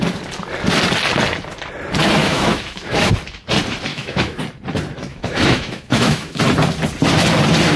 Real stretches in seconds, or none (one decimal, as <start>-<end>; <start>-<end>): 0.0-2.2; 3.1-3.9; 4.4-5.1; 6.4-7.8